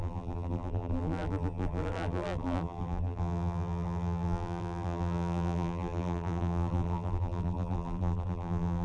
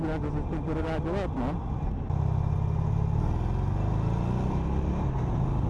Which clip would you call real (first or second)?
second